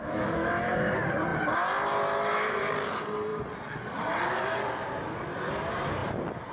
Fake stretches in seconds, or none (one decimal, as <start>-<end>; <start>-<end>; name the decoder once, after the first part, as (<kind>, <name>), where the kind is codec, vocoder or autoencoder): 0.0-0.5 (autoencoder, DAC-VAE)